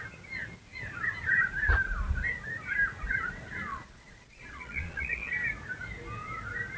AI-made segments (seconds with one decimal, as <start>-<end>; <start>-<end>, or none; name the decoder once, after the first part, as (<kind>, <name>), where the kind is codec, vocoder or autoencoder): 3.7-5.3 (vocoder, Vocos)

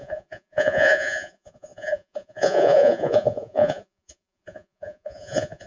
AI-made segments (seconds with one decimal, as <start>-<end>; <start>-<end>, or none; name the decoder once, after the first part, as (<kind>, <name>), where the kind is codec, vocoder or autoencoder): 0.0-5.7 (vocoder, Vocos)

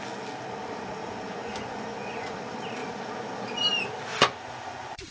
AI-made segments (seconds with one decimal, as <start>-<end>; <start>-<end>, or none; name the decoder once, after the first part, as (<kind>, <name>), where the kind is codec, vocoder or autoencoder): 1.0-2.4 (vocoder, Vocos); 4.1-5.1

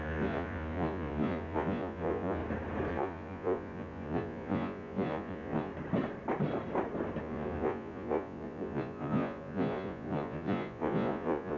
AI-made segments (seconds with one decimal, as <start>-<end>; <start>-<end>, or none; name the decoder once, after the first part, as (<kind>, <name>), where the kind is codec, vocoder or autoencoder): 0.0-2.4 (vocoder, Vocos); 2.9-5.7; 7.2-11.6

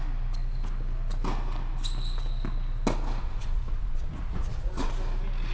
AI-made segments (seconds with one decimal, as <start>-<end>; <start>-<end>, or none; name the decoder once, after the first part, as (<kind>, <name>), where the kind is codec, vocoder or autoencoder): 3.2-4.9 (vocoder, Vocos)

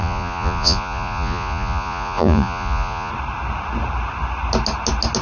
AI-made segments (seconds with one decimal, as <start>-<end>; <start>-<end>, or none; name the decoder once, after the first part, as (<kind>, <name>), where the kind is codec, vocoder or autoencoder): 0.0-3.1 (vocoder, Vocos)

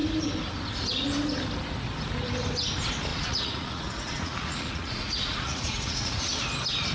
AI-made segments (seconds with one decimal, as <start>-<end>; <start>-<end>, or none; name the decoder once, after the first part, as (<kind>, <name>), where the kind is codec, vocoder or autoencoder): 3.1-6.2 (vocoder, Vocos)

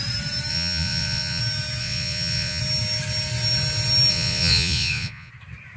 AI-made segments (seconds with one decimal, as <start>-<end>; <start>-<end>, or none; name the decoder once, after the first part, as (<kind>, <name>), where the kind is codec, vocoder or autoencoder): 0.5-1.4 (vocoder, Vocos); 1.8-2.6; 4.1-5.3